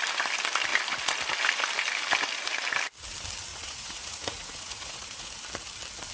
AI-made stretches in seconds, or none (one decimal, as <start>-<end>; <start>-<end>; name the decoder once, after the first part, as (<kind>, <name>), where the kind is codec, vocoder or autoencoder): 3.5-5.3 (vocoder, Vocos)